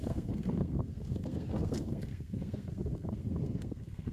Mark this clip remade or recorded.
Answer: remade